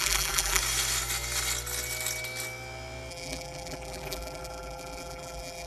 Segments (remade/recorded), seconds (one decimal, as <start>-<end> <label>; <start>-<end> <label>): 0.0-0.6 remade; 0.6-3.1 recorded; 3.1-5.7 remade